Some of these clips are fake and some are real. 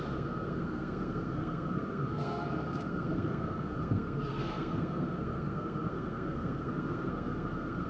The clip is fake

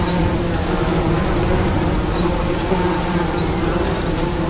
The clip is fake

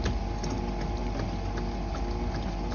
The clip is real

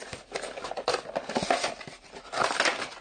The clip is real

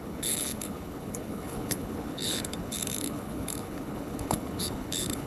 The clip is fake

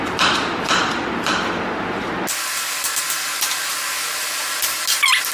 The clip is real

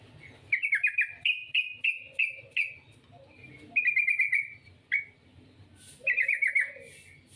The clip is real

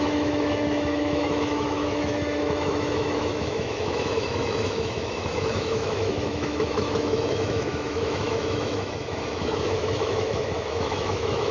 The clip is fake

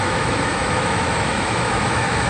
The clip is fake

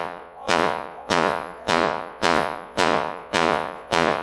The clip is fake